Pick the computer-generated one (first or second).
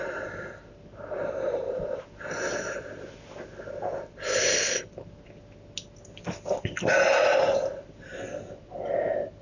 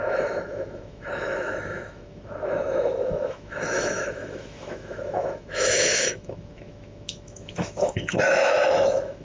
second